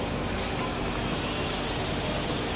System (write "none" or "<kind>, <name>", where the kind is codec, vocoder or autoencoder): none